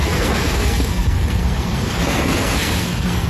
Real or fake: fake